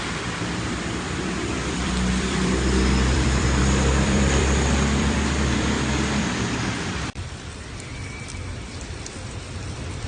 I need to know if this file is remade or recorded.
remade